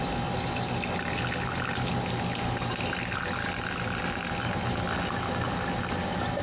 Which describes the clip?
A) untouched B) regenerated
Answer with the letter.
A